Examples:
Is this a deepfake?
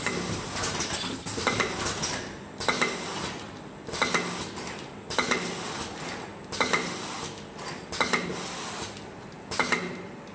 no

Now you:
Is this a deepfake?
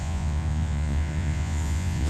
yes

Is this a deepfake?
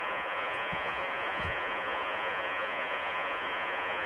yes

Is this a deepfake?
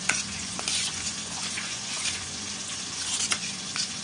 yes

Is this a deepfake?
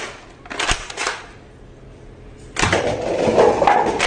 no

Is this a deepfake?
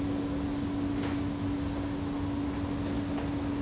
no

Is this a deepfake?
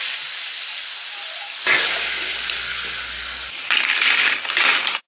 no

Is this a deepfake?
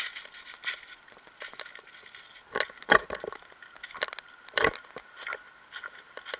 no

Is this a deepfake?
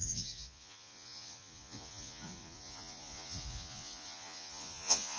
yes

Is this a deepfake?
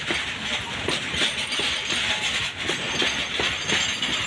no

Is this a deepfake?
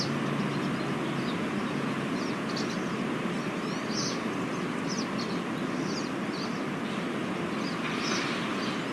no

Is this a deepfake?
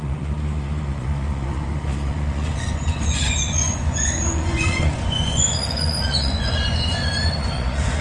yes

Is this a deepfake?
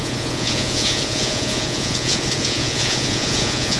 yes